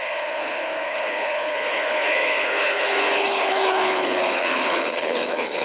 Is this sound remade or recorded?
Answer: remade